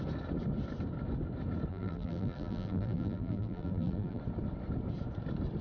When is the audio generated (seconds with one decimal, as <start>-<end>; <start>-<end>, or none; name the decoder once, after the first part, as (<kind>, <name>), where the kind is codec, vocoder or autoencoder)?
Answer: 1.7-4.2 (vocoder, BigVGAN v2)